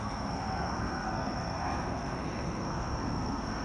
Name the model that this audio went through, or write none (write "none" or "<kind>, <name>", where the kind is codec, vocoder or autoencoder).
codec, SNAC